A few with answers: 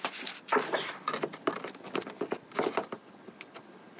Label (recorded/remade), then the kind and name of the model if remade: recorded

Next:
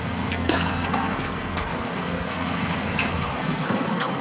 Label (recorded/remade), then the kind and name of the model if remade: remade, codec, SNAC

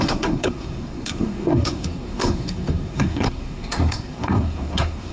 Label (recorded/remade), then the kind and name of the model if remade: remade, codec, SNAC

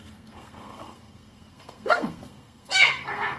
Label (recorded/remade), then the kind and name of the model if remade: remade, codec, SNAC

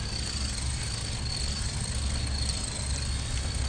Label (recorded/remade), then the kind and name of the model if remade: recorded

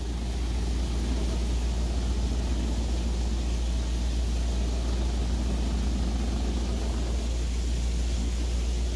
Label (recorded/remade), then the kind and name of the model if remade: recorded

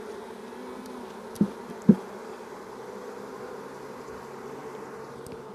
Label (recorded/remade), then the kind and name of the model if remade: recorded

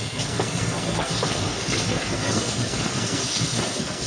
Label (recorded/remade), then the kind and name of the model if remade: remade, codec, SNAC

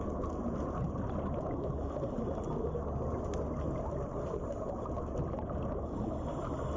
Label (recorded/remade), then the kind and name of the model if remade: recorded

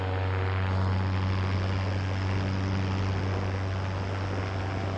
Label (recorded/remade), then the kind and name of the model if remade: recorded